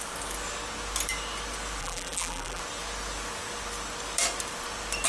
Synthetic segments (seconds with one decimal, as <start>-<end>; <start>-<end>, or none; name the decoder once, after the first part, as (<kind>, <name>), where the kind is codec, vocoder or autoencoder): 1.8-2.6 (vocoder, BigVGAN v2)